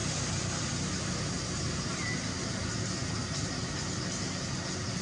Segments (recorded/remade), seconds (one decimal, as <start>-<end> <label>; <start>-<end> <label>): 0.0-5.0 recorded